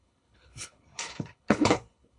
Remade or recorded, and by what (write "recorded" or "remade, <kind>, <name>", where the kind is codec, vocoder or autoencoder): remade, codec, HILCodec